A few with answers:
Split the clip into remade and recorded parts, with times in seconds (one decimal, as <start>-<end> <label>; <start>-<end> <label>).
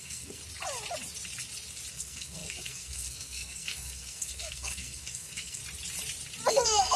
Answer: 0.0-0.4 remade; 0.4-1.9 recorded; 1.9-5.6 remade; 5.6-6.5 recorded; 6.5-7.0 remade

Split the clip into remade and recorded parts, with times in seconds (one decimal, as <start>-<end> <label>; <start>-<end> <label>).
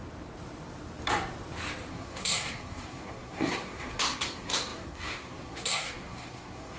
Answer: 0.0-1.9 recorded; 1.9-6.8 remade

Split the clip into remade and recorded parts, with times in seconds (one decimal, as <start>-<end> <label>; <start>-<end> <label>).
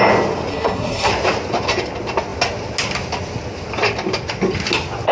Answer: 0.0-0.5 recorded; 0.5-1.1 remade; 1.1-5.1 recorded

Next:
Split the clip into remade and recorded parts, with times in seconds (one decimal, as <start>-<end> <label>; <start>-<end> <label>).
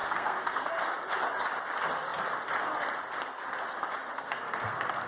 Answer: 0.0-0.7 remade; 0.7-4.1 recorded; 4.1-5.1 remade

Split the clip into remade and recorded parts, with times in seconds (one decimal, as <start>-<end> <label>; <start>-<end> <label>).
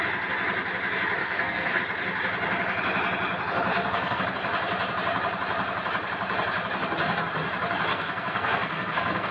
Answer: 0.0-1.2 recorded; 1.2-1.8 remade; 1.8-3.7 recorded; 3.7-4.2 remade; 4.2-7.9 recorded; 7.9-9.3 remade